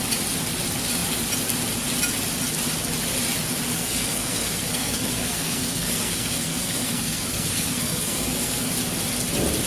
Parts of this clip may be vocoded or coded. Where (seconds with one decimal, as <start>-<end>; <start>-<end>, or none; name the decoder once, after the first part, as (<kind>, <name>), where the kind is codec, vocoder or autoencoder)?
3.7-8.7 (codec, SNAC)